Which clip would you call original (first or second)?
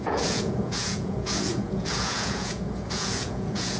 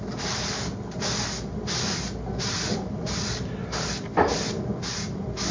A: second